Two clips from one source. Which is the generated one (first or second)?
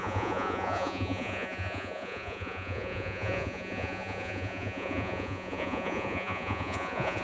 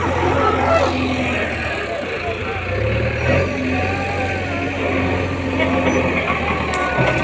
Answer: first